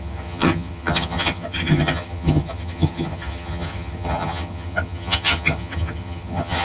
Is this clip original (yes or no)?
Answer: no